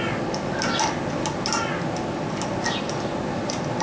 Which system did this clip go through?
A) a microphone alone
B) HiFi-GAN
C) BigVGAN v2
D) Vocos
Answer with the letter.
A